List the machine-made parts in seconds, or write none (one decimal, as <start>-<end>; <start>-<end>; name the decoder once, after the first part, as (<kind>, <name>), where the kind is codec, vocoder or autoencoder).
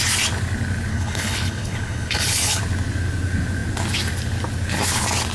0.9-2.6 (codec, HILCodec)